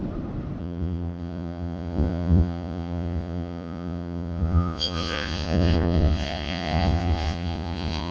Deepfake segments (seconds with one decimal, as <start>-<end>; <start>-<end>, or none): 0.6-8.1